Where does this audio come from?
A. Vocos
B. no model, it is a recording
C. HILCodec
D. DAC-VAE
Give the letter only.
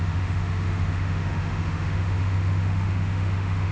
D